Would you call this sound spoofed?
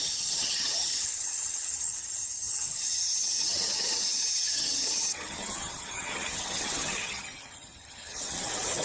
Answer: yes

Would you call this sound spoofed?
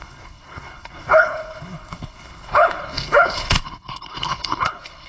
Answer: yes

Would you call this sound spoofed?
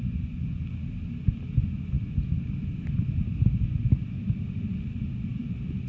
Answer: no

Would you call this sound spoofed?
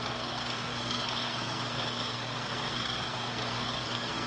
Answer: yes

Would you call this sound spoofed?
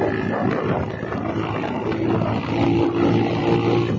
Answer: no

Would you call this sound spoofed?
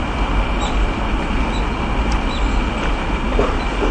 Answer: no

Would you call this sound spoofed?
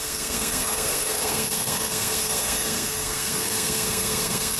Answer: yes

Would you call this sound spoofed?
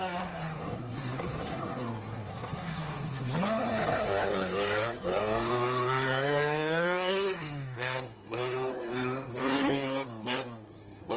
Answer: yes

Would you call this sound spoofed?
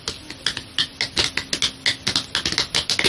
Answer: no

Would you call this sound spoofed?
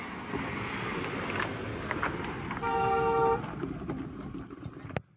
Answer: no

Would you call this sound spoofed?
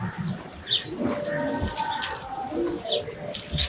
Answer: no